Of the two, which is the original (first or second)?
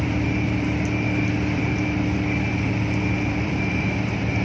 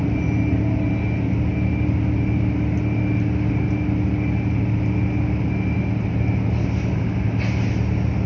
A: second